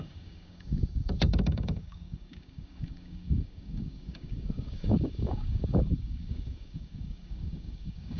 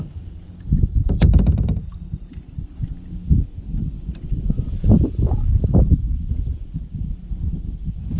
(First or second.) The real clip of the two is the second